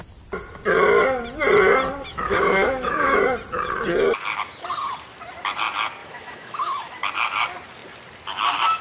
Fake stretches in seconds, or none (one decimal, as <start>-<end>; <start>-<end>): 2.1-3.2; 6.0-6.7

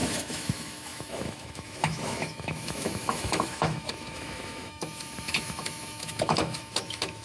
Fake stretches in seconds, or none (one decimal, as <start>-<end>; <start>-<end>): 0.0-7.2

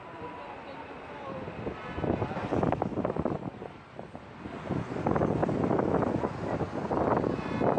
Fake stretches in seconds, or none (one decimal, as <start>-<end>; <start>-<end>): none

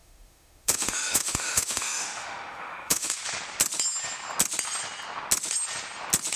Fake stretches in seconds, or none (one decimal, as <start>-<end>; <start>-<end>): 0.0-3.2

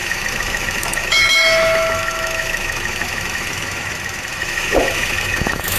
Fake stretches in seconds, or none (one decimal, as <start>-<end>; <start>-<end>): 0.0-5.8

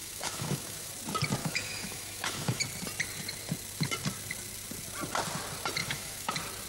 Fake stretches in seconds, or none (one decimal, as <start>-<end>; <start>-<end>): 0.0-0.9; 1.4-2.6; 5.8-6.3

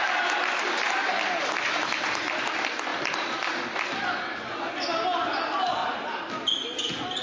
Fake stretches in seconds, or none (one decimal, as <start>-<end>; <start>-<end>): none

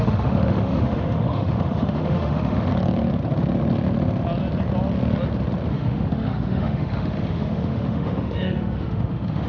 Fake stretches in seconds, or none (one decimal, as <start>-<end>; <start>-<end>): 0.0-2.7; 5.7-9.5